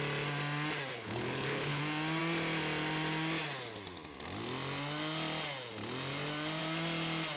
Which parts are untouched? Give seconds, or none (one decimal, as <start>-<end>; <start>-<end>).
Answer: 0.0-0.9; 1.8-7.4

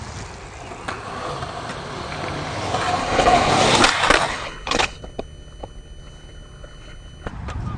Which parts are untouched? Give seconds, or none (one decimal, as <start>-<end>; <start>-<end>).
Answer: 0.0-3.0; 3.5-4.3; 7.3-7.8

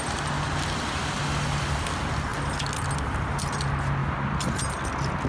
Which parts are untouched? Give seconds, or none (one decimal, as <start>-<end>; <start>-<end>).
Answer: 0.0-5.3

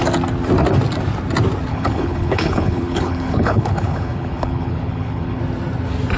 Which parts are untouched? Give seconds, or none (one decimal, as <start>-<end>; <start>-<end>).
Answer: 0.0-1.7; 5.4-6.2